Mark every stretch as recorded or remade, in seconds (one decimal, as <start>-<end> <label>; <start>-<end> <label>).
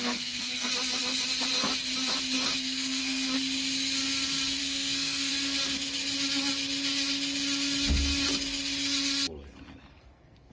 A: 0.0-0.7 remade; 0.7-2.5 recorded; 2.5-3.3 remade; 3.3-4.6 recorded; 4.6-5.3 remade; 5.3-9.9 recorded; 9.9-10.5 remade